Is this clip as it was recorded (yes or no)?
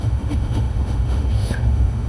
no